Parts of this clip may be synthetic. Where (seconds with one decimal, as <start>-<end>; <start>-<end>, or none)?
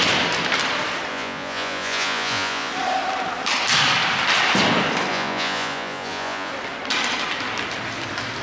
1.1-2.7; 5.1-6.5